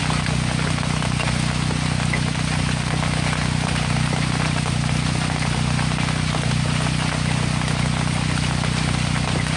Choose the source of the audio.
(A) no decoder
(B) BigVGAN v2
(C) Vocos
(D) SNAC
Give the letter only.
A